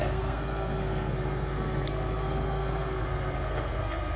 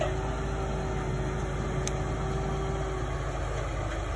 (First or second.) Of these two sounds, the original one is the second